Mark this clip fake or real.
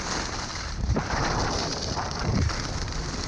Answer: real